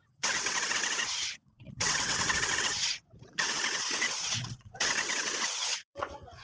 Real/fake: fake